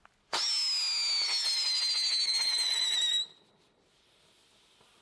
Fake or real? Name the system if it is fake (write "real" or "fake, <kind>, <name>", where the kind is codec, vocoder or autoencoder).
real